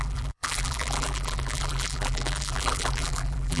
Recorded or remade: remade